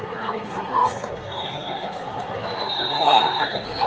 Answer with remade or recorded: remade